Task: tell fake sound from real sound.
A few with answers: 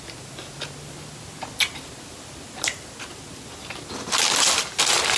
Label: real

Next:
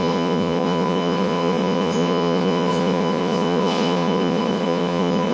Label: fake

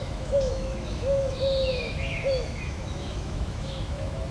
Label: fake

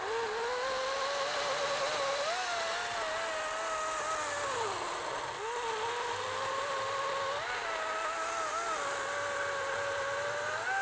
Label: real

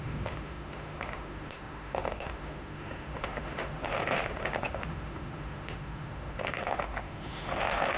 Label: fake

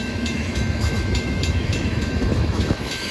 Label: fake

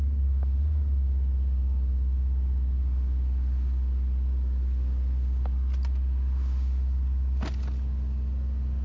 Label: real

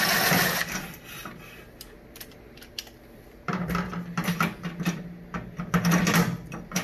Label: real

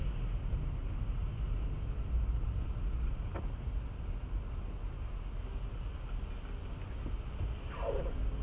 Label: real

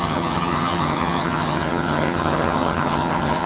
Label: fake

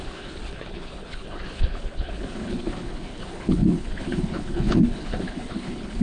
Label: fake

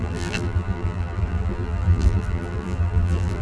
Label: fake